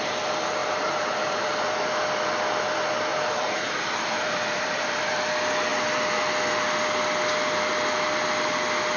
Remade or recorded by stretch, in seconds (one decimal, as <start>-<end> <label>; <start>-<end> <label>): 0.0-0.6 recorded; 0.6-1.9 remade; 1.9-3.1 recorded; 3.1-5.2 remade; 5.2-9.0 recorded